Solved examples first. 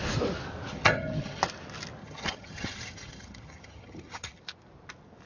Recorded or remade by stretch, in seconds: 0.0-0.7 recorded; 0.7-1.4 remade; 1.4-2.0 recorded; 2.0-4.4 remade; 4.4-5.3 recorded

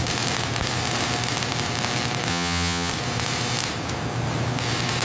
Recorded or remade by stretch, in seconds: 0.0-2.3 recorded; 2.3-2.9 remade; 2.9-5.0 recorded

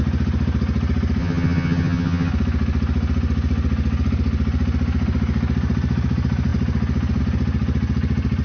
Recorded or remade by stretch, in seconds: 0.0-1.2 recorded; 1.2-2.3 remade; 2.3-8.4 recorded

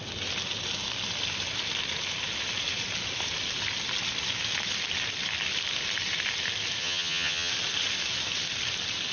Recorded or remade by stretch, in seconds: 0.0-6.8 recorded; 6.8-7.5 remade; 7.5-9.1 recorded

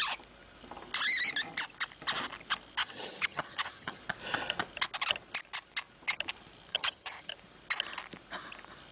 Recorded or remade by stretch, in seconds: 0.0-2.8 recorded; 2.8-4.0 remade; 4.0-6.7 recorded; 6.7-7.3 remade; 7.3-8.9 recorded

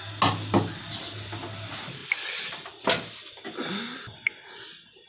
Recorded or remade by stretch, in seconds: 0.0-5.1 recorded